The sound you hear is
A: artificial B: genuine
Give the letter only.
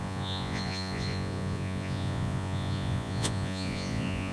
A